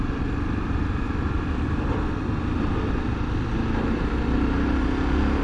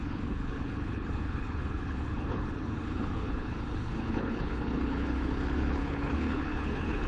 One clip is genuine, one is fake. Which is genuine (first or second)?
first